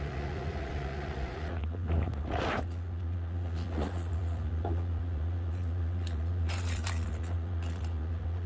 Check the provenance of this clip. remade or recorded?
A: remade